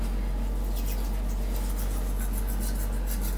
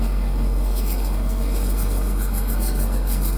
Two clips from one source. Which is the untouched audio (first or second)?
first